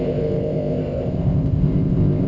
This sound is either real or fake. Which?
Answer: fake